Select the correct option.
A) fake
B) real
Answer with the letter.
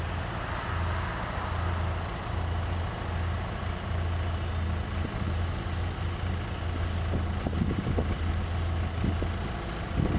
B